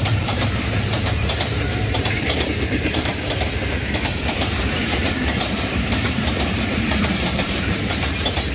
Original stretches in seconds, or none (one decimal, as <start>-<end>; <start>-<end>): 3.1-3.8